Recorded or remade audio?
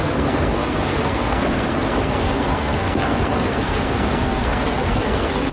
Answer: remade